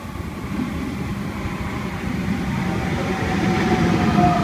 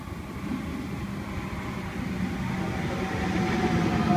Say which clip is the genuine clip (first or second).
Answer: second